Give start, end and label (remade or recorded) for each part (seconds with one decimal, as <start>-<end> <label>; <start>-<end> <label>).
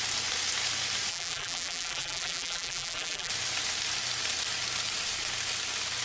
0.0-1.1 recorded; 1.1-3.3 remade; 3.3-6.0 recorded